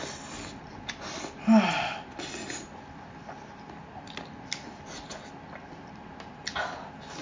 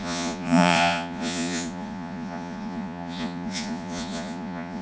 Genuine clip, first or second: first